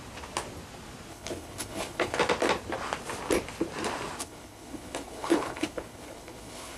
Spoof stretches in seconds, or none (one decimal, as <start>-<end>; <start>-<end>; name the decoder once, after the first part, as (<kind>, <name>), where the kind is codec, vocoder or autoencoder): 1.1-2.2 (codec, HILCodec); 4.2-6.8